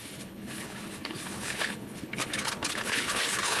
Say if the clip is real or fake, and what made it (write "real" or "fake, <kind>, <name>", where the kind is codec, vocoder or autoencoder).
fake, codec, HILCodec